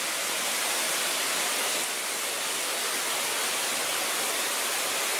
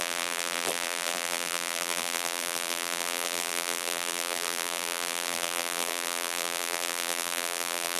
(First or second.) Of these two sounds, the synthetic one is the second